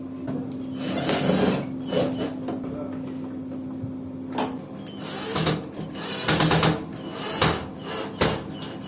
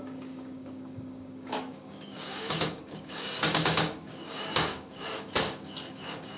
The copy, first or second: second